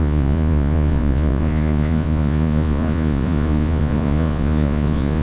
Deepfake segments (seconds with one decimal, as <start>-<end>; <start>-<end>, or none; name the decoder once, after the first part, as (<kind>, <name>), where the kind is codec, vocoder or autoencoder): 0.0-5.2 (vocoder, Vocos)